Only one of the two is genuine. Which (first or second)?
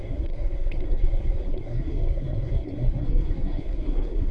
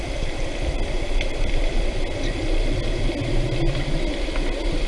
second